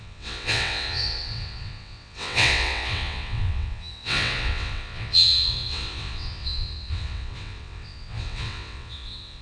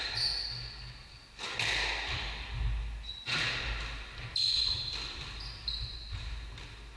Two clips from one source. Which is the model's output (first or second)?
first